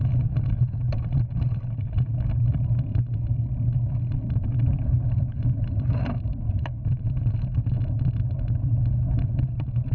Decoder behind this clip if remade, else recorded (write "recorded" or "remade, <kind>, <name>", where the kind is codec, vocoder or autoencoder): recorded